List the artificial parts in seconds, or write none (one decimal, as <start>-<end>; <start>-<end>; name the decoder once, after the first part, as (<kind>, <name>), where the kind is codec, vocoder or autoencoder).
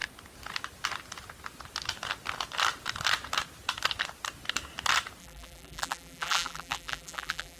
5.2-7.6 (vocoder, BigVGAN v2)